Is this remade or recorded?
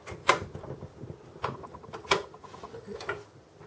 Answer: recorded